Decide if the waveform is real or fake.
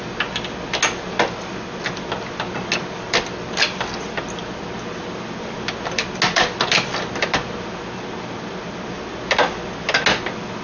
real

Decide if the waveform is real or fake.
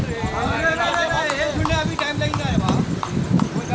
real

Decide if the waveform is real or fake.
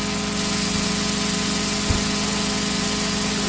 real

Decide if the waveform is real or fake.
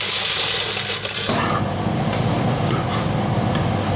real